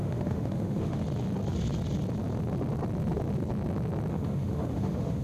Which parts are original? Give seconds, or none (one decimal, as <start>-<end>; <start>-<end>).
1.0-4.1